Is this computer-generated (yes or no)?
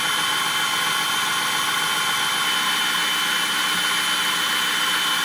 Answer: no